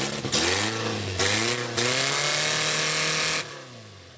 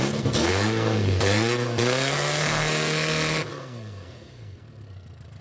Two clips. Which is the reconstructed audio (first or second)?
second